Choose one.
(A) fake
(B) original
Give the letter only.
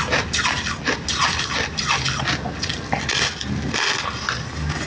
B